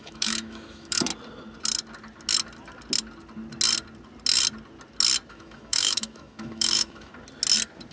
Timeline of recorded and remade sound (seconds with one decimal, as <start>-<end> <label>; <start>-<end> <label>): 0.0-1.1 remade; 1.1-5.3 recorded; 5.3-7.1 remade; 7.1-7.9 recorded